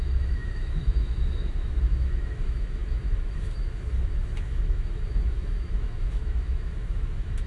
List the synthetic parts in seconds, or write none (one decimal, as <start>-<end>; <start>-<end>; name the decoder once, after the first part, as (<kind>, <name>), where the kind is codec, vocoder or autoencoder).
0.0-7.5 (autoencoder, DAC-VAE)